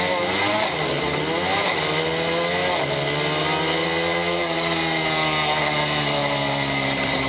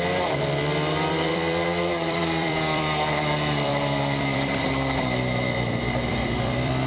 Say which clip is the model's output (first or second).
second